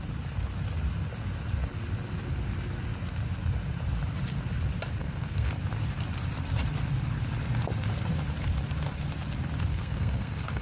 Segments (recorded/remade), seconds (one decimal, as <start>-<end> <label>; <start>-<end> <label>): 0.0-5.0 recorded; 5.0-5.5 remade; 5.5-9.7 recorded; 9.7-10.6 remade